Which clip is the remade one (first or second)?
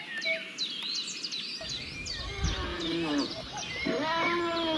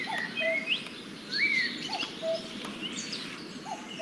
second